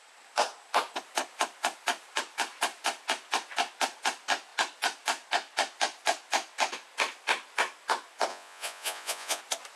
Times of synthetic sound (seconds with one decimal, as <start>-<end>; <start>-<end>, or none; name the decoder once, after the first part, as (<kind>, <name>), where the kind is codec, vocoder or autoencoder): 8.3-9.4 (vocoder, Vocos)